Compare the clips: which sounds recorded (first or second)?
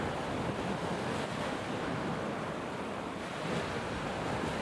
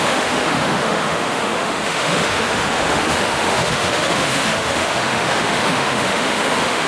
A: first